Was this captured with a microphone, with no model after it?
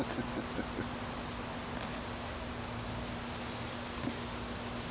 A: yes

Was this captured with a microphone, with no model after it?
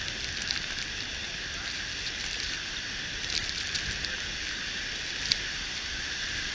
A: no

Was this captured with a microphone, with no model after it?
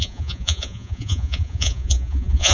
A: no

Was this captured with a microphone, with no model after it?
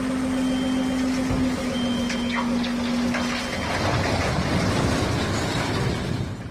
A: yes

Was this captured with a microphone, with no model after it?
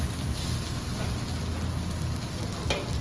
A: yes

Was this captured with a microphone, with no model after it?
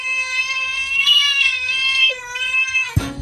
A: no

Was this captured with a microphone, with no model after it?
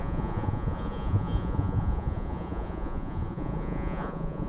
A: no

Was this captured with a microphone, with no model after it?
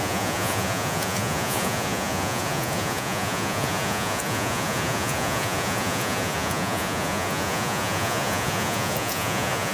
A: no